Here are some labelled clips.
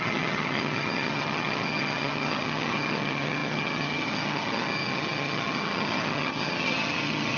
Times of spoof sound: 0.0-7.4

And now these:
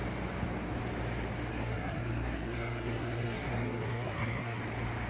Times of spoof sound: 1.5-4.6

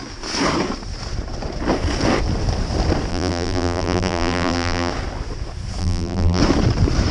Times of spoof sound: 3.1-4.9; 5.8-6.4

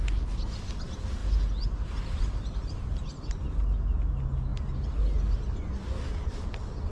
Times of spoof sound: none

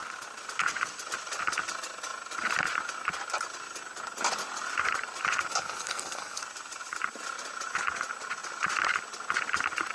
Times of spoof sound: 5.5-6.4

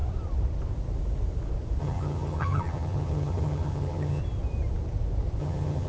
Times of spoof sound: 1.8-4.2; 5.4-5.9

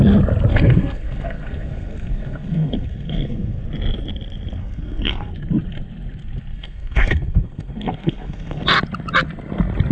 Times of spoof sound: 0.5-3.6; 4.6-5.3; 6.5-8.6

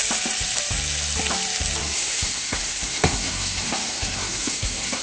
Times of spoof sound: 1.8-5.0